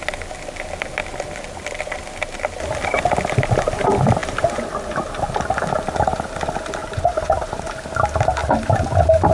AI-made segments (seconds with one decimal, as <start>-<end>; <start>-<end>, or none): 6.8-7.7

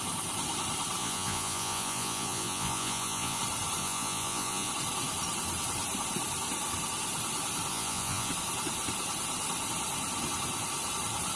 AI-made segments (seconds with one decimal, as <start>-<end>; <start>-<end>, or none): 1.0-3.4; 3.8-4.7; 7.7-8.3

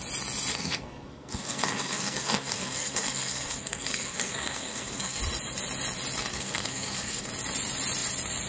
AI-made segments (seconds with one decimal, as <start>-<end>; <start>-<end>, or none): 0.5-5.2; 6.3-7.3

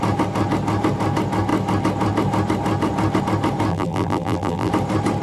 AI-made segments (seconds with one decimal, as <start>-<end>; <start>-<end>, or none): 3.7-4.7

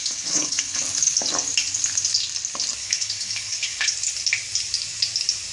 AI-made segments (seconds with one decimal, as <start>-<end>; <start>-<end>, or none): 0.0-0.8; 2.8-3.9

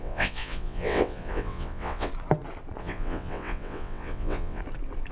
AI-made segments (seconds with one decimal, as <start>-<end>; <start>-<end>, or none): 0.0-2.1; 2.8-4.6